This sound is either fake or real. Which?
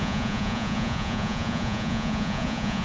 fake